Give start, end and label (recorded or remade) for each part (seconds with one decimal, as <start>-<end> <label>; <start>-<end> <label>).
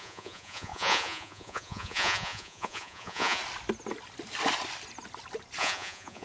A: 0.0-3.4 remade; 3.4-5.6 recorded; 5.6-6.2 remade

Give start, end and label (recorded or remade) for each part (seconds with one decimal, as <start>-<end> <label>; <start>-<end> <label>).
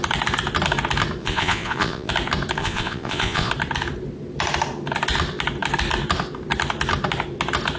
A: 0.0-1.2 recorded; 1.2-2.1 remade; 2.1-2.6 recorded; 2.6-3.5 remade; 3.5-7.8 recorded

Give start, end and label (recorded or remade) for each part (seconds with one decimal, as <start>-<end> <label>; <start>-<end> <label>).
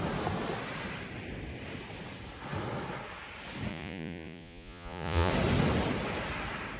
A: 0.0-3.7 recorded; 3.7-5.3 remade; 5.3-6.8 recorded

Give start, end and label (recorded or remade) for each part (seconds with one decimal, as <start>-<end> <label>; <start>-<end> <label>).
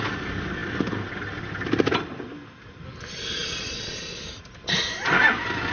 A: 0.0-5.7 recorded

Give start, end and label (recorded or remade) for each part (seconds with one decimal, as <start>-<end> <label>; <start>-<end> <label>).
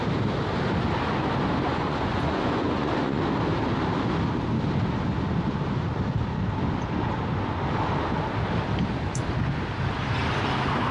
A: 0.0-1.7 recorded; 1.7-3.2 remade; 3.2-10.9 recorded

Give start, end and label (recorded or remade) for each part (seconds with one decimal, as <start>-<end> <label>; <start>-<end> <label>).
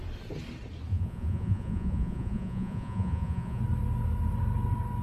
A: 0.0-0.9 recorded; 0.9-3.6 remade; 3.6-5.0 recorded